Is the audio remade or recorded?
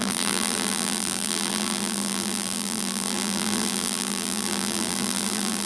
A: remade